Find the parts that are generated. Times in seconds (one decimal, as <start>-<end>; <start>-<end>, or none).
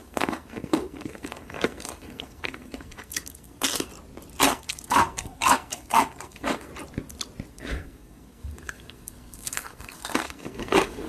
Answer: 0.0-3.9; 4.5-6.7; 7.5-11.1